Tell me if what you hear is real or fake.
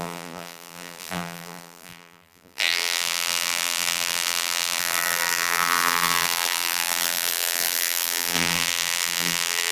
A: fake